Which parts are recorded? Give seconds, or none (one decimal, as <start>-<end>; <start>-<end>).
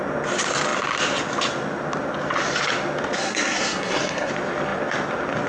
0.0-3.2; 4.3-5.5